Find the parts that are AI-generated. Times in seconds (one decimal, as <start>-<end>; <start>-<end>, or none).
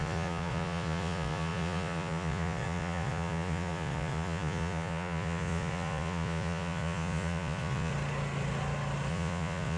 0.0-7.9; 9.1-9.8